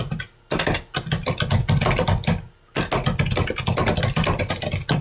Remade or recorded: recorded